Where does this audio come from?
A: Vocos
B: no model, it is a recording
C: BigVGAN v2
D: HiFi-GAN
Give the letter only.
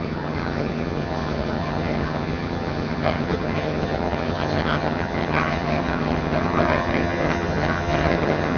D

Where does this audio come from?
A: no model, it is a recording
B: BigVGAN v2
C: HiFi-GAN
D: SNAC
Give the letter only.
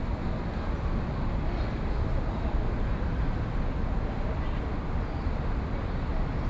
A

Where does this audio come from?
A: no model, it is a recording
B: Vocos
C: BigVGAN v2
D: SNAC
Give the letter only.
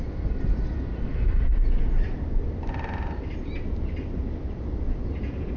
A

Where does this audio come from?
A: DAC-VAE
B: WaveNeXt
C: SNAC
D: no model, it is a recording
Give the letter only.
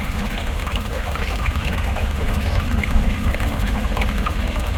A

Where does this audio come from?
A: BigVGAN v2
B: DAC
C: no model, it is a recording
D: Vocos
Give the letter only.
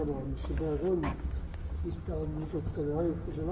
B